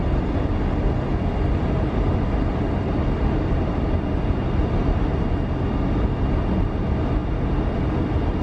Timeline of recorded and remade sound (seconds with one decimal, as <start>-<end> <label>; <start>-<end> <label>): 0.0-1.1 recorded; 1.1-5.1 remade; 5.1-8.4 recorded